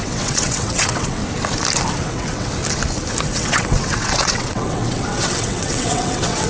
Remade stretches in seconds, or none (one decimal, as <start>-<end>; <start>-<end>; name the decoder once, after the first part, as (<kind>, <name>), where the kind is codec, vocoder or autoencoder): 0.0-1.2 (vocoder, WaveNeXt); 1.9-2.6; 3.3-6.5